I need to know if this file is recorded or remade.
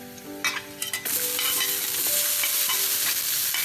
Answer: recorded